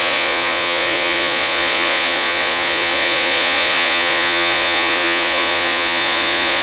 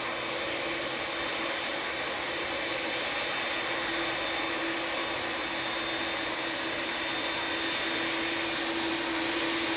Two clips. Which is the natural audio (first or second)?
second